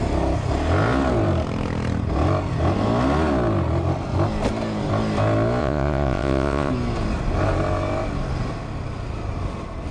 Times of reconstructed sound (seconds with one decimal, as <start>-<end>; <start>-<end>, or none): 5.6-6.7